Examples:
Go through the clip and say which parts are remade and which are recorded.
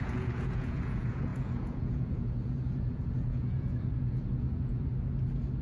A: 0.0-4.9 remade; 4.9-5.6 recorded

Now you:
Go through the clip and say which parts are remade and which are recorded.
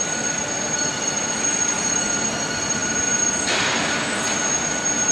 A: 0.0-5.1 recorded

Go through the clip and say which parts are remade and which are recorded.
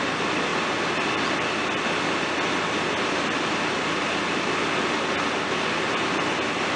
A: 0.0-6.8 recorded